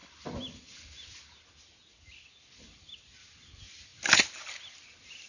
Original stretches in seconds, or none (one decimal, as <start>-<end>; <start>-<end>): 0.0-5.3